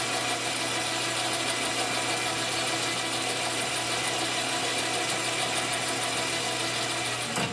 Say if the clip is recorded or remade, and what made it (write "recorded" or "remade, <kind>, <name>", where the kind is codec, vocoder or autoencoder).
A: recorded